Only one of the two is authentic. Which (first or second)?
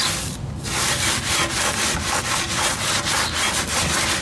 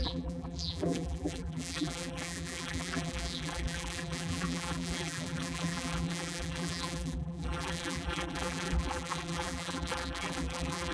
first